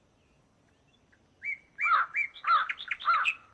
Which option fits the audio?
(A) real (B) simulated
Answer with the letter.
A